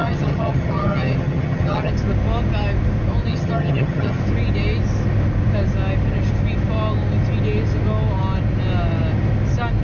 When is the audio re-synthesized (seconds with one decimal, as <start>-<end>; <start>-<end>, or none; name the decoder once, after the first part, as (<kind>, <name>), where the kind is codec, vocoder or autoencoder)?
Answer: 0.0-1.9 (vocoder, HiFi-GAN); 3.3-4.2